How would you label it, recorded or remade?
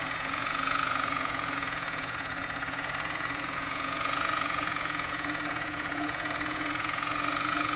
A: remade